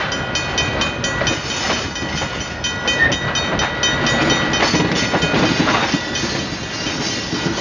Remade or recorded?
recorded